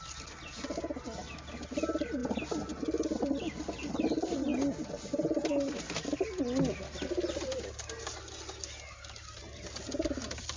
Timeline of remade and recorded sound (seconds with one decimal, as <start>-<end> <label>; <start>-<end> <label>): 0.0-10.6 recorded